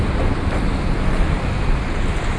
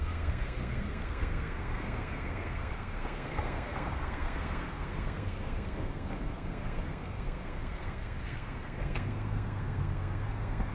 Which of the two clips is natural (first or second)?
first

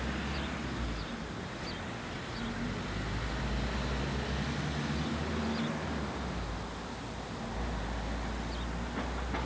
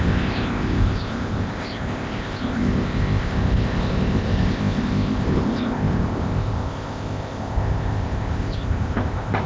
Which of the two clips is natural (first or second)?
first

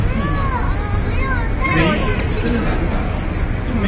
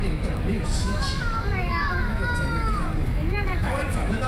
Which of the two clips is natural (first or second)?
first